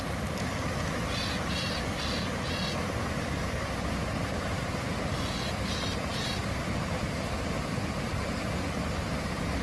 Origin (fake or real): real